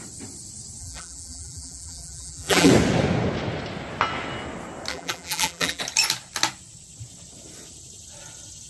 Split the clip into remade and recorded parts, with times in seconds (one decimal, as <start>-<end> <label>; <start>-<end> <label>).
0.0-0.8 recorded; 0.8-2.7 remade; 2.7-4.9 recorded; 4.9-5.8 remade; 5.8-8.7 recorded